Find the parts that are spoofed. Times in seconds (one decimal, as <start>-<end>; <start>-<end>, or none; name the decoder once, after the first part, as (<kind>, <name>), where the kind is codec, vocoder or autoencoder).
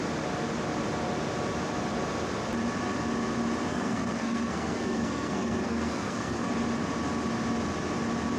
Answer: 3.7-6.5 (codec, SNAC)